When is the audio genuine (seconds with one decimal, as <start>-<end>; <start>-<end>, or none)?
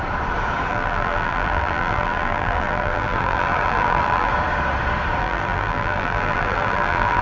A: 0.0-0.7; 4.3-5.2